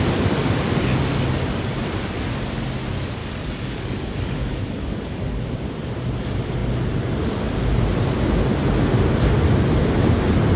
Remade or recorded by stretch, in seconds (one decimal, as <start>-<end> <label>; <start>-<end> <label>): 0.0-3.2 recorded; 3.2-5.4 remade; 5.4-10.6 recorded